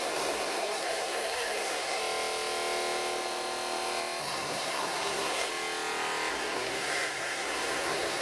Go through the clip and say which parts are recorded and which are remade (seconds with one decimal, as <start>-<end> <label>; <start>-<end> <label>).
0.0-2.0 remade; 2.0-4.2 recorded; 4.2-5.5 remade; 5.5-6.3 recorded; 6.3-8.2 remade

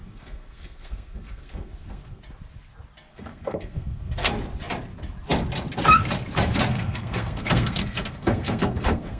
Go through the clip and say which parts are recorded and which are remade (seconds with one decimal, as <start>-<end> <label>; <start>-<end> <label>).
0.0-2.2 remade; 2.2-3.1 recorded; 3.1-4.3 remade; 4.3-6.7 recorded; 6.7-9.2 remade

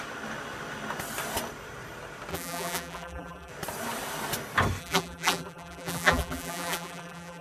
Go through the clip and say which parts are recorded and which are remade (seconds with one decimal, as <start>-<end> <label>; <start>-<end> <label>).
0.0-2.3 recorded; 2.3-3.5 remade; 3.5-4.8 recorded; 4.8-7.4 remade

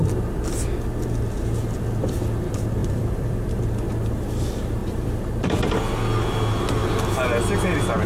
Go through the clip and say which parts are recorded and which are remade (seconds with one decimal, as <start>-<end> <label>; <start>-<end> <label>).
0.0-2.8 recorded; 2.8-3.4 remade; 3.4-4.8 recorded; 4.8-5.4 remade; 5.4-8.1 recorded

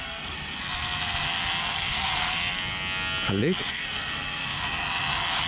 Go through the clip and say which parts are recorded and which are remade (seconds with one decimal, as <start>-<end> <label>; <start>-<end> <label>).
0.0-0.6 remade; 0.6-1.6 recorded; 1.6-2.1 remade; 2.1-3.7 recorded; 3.7-4.5 remade; 4.5-5.5 recorded

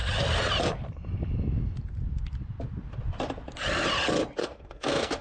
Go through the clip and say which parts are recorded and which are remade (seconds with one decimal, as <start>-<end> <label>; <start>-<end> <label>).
0.0-4.4 recorded; 4.4-5.2 remade

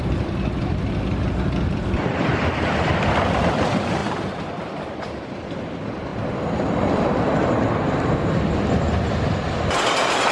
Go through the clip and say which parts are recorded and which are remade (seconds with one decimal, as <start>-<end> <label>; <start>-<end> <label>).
0.0-8.2 remade; 8.2-9.0 recorded; 9.0-10.3 remade

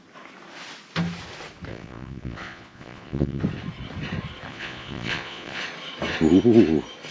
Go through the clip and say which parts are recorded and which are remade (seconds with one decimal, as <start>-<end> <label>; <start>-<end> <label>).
0.0-1.7 recorded; 1.7-3.4 remade; 3.4-4.5 recorded; 4.5-5.6 remade; 5.6-7.1 recorded